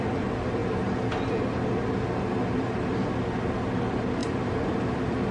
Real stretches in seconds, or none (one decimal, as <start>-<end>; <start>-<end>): 0.6-3.8